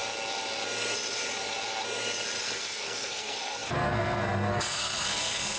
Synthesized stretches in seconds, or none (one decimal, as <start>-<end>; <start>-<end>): 2.4-5.6